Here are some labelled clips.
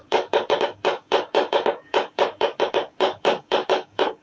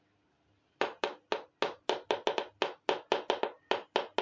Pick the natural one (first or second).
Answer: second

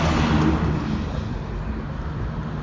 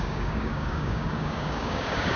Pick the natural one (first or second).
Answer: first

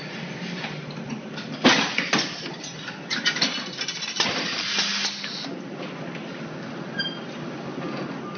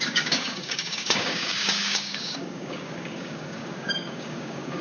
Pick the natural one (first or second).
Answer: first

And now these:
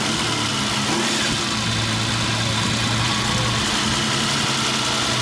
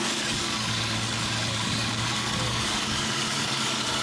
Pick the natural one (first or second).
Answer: first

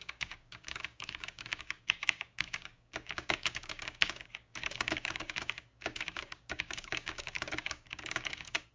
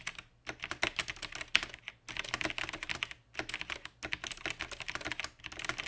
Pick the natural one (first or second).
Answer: second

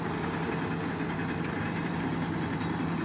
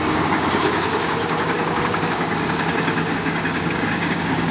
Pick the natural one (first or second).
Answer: first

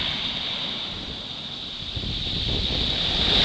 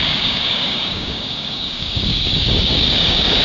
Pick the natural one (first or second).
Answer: first